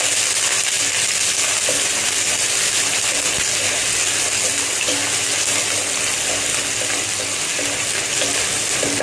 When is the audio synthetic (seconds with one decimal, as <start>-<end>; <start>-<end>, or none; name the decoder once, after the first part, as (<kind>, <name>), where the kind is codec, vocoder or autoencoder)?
none

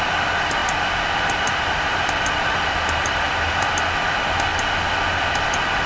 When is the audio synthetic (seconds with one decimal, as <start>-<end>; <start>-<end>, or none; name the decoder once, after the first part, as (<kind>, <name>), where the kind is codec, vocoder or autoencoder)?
none

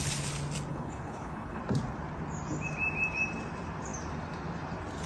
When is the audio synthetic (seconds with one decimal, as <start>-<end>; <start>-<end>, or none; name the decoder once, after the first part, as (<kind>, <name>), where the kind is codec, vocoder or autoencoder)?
0.7-1.6 (codec, HILCodec)

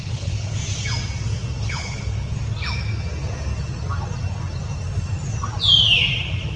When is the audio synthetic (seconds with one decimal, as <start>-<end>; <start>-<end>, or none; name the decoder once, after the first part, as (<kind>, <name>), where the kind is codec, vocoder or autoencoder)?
0.0-0.6 (codec, HILCodec); 1.6-2.4

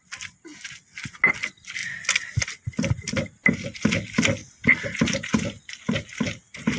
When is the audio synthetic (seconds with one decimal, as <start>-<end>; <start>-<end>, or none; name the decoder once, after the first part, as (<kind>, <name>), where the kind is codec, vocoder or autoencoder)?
none

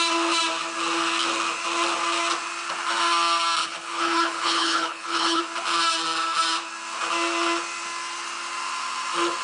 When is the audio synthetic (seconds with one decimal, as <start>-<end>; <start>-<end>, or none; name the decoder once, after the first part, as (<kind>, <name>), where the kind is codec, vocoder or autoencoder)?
3.6-5.4 (codec, HILCodec)

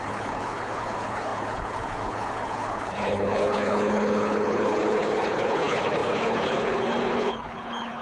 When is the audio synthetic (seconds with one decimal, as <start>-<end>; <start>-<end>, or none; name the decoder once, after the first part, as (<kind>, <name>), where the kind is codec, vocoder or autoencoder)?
0.0-8.0 (codec, HILCodec)

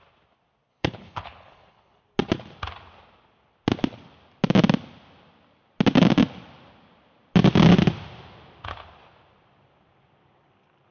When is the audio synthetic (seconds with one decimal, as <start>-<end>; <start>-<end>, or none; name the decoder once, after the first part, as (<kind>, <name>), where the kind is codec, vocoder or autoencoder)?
0.7-2.0 (codec, HILCodec)